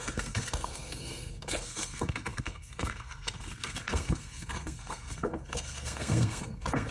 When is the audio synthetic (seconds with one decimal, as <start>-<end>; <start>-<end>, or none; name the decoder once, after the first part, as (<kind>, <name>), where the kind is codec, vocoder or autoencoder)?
0.0-6.9 (codec, SNAC)